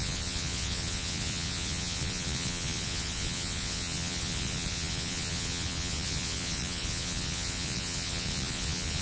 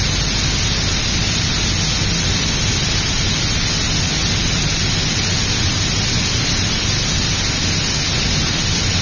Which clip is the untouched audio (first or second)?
second